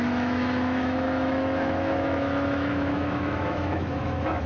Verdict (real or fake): fake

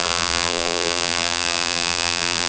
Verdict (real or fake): fake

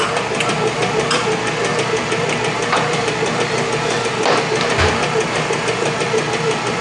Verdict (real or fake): real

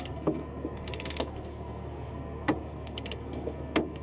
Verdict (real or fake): fake